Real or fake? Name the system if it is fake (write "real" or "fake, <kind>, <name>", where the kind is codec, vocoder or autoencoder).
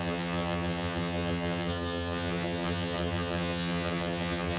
fake, vocoder, HiFi-GAN